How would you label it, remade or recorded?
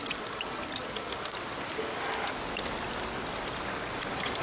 recorded